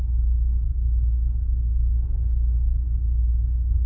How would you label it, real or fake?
real